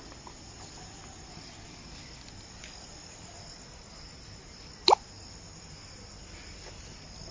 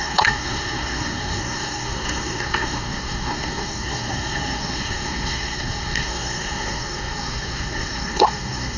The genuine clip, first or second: first